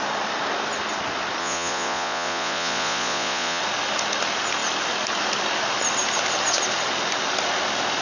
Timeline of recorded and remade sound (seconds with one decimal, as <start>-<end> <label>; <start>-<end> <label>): 0.0-1.4 recorded; 1.4-3.6 remade; 3.6-8.0 recorded